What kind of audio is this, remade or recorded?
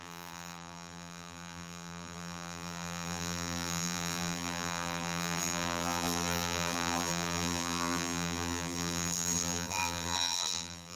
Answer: remade